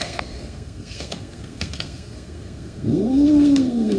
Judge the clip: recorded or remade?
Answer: remade